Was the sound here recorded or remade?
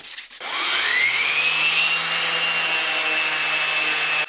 recorded